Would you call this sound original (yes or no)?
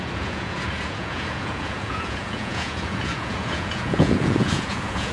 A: no